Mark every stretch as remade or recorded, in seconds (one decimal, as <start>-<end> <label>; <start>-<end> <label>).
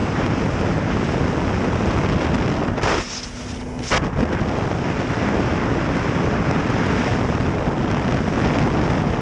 0.0-0.6 remade; 0.6-9.2 recorded